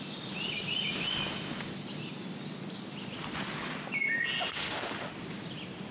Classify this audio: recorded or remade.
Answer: recorded